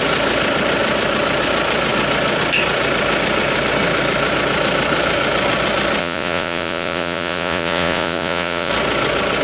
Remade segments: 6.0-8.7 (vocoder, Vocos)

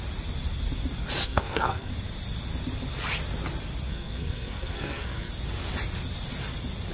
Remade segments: 1.2-1.9 (codec, SNAC); 3.9-5.3

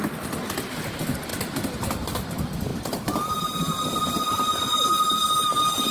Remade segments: 1.3-2.3 (vocoder, BigVGAN v2); 2.7-4.0

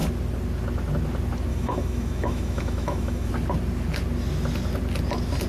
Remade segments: 1.5-3.3 (autoencoder, DAC-VAE)